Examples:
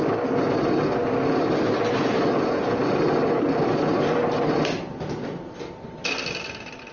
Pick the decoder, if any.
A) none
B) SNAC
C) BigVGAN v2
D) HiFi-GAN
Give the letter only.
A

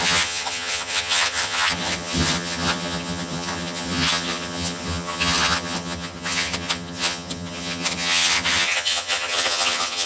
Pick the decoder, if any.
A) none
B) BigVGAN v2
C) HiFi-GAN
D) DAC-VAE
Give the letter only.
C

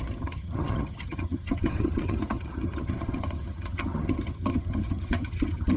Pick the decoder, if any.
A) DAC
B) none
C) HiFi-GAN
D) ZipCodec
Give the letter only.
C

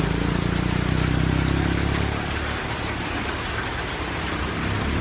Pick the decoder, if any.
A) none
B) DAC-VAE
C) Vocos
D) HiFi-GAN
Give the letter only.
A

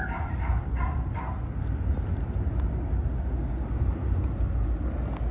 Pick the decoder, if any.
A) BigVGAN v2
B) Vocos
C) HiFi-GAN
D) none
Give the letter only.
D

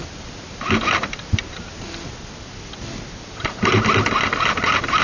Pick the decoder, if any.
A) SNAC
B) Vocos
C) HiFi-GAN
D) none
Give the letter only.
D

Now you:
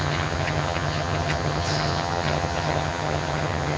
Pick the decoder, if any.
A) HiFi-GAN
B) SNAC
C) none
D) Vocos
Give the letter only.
A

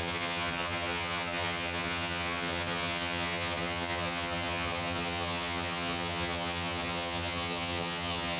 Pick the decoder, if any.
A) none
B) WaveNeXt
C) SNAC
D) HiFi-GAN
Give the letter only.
D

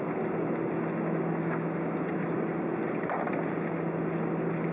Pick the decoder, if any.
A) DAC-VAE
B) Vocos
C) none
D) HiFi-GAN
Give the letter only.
C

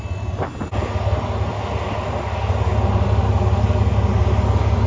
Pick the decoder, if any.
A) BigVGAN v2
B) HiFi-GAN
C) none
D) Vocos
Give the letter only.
C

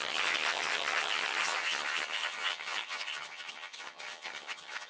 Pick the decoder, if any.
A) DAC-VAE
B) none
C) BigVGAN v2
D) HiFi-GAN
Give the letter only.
D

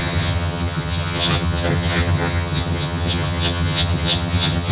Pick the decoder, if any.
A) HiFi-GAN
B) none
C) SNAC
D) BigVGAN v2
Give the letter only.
A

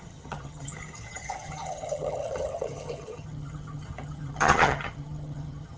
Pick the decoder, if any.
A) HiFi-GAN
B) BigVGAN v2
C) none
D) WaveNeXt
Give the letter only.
A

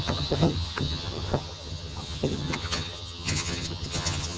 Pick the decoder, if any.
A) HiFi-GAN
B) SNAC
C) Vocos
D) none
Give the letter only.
A